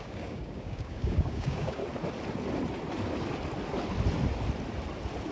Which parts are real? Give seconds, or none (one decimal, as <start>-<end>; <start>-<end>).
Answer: 1.8-5.3